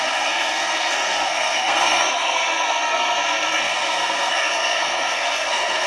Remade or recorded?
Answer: remade